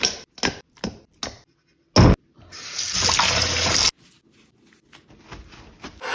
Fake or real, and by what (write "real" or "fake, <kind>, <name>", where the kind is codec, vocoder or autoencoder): real